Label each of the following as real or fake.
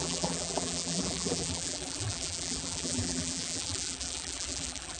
fake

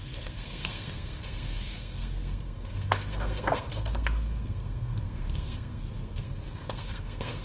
fake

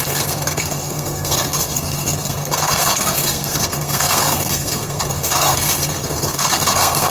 fake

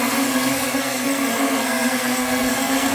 fake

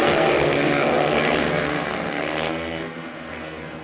fake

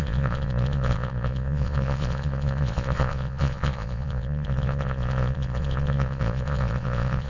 fake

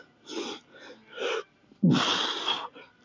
real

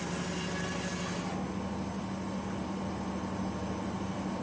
real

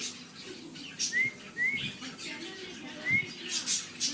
real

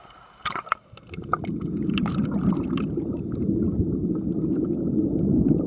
real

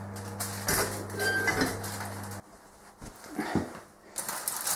real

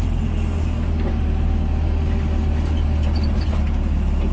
real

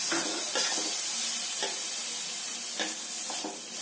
real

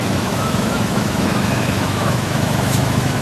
fake